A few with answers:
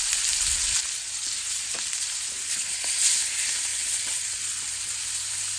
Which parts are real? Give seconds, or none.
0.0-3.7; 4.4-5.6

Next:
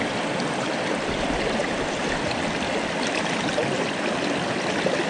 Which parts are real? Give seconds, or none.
0.0-1.6; 2.3-5.1